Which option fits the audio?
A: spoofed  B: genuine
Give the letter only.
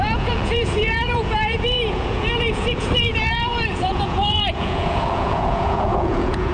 A